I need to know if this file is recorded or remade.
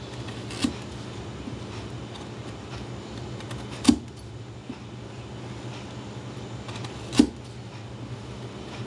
recorded